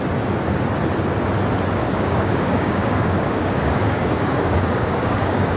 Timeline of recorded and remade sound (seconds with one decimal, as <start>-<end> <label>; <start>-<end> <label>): 0.0-1.8 recorded; 1.8-5.6 remade